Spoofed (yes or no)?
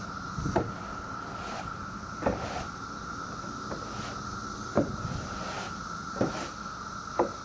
no